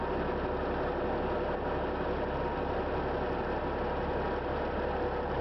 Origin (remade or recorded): recorded